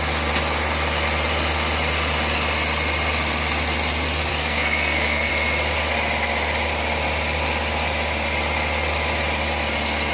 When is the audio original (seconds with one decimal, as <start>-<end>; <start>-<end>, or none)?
0.0-4.3; 5.3-10.1